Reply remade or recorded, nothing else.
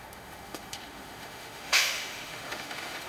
remade